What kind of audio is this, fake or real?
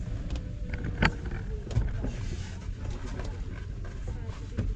real